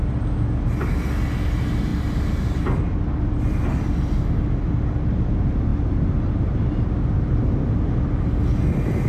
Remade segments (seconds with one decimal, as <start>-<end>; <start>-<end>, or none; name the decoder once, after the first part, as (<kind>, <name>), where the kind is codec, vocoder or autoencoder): none